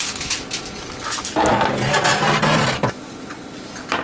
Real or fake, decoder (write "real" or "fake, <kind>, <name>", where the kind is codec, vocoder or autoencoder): real